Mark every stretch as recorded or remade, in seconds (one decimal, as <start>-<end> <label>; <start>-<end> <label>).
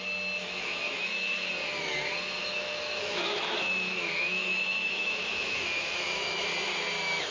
0.0-0.4 recorded; 0.4-1.5 remade; 1.5-2.4 recorded; 2.4-6.4 remade; 6.4-7.3 recorded